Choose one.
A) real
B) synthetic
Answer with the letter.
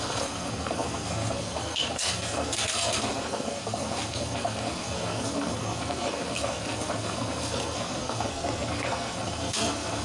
B